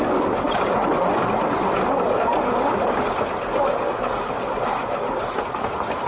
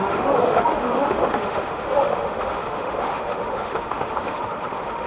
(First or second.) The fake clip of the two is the second